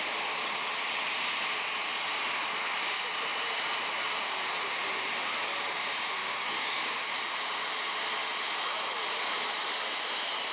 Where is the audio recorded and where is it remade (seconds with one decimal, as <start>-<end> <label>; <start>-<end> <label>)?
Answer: 0.0-6.2 recorded; 6.2-7.1 remade; 7.1-10.5 recorded